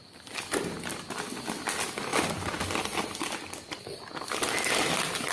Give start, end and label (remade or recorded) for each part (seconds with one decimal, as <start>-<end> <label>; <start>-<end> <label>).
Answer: 0.0-0.9 remade; 0.9-5.3 recorded